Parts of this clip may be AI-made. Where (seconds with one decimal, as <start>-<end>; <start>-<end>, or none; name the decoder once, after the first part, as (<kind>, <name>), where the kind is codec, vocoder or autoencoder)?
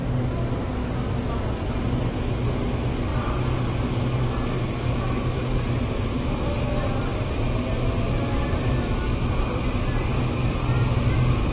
none